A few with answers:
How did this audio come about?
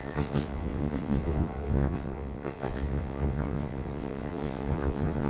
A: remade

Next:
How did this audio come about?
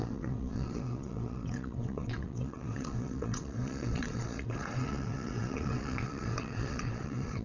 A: remade